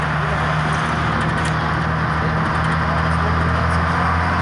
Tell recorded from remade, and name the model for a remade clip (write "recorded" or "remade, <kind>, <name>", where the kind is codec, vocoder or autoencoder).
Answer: recorded